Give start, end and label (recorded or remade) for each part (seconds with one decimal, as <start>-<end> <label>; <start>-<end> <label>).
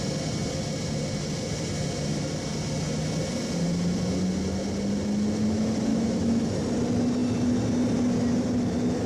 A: 0.0-5.9 recorded; 5.9-6.5 remade; 6.5-9.1 recorded